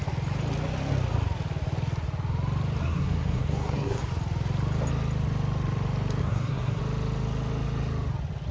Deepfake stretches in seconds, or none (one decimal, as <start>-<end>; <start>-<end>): 2.8-4.0; 6.2-6.8